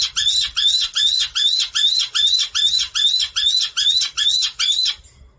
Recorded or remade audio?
recorded